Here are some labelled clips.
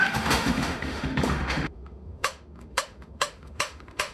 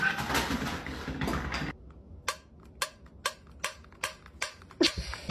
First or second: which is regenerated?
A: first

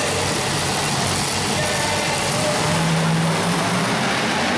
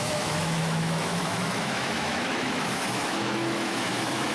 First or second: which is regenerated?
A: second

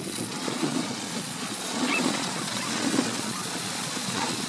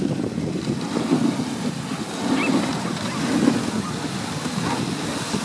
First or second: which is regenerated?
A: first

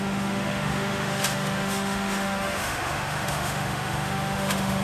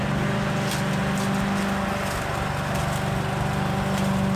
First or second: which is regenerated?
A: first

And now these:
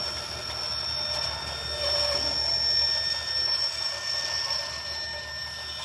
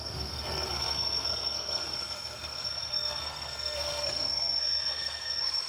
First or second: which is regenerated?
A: second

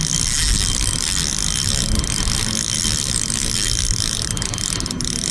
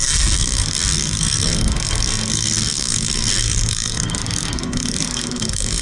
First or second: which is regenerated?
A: second